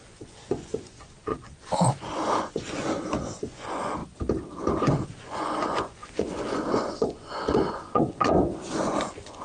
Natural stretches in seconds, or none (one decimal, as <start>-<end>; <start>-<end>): 4.0-4.8